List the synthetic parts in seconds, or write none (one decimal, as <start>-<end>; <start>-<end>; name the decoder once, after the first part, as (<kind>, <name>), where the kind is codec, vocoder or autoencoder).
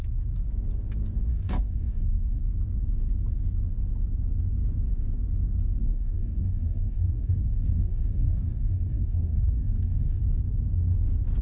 1.3-2.4 (codec, DAC); 5.8-10.2